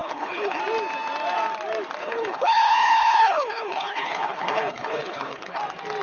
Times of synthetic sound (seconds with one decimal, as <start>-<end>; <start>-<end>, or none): 0.0-0.6; 2.0-5.6